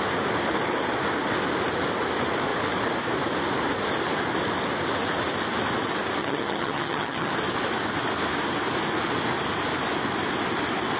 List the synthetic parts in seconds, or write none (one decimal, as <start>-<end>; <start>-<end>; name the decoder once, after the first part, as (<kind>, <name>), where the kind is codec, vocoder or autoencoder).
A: 6.2-7.3 (vocoder, HiFi-GAN)